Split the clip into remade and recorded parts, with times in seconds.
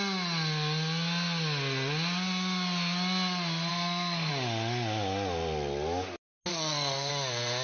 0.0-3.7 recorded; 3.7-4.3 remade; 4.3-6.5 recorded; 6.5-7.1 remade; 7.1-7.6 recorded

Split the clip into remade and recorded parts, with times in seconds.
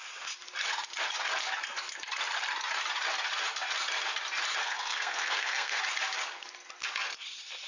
0.0-4.6 recorded; 4.6-5.8 remade; 5.8-7.7 recorded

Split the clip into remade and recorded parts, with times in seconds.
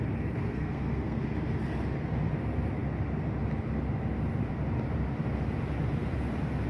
0.0-0.5 recorded; 0.5-1.2 remade; 1.2-6.7 recorded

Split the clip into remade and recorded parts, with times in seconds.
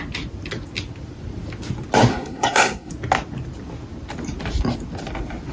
0.0-2.1 recorded; 2.1-2.9 remade; 2.9-5.5 recorded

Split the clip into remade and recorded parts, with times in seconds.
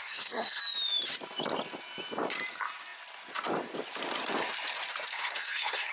0.0-0.6 remade; 0.6-5.1 recorded; 5.1-5.9 remade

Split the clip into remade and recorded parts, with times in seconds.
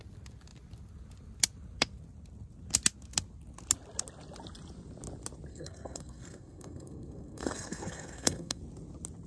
0.0-5.5 recorded; 5.5-8.6 remade; 8.6-9.3 recorded